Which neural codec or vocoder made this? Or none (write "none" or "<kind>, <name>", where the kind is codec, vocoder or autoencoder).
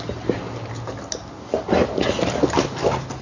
none